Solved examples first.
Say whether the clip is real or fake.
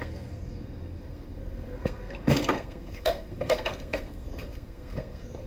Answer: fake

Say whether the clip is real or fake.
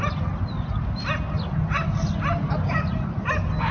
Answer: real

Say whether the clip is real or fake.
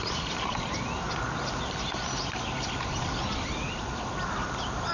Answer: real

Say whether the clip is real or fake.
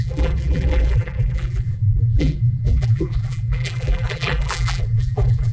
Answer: fake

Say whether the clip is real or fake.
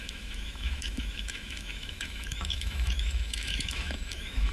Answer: fake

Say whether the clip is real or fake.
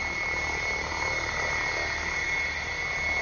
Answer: real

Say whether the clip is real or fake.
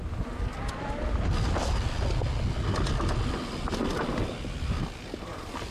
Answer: real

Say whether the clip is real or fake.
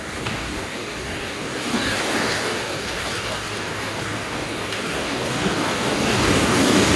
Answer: fake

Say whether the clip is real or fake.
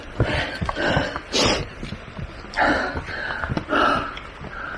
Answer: real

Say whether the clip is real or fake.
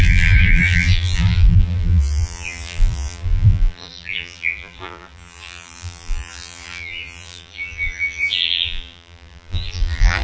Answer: fake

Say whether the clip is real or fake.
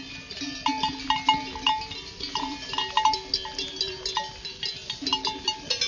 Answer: real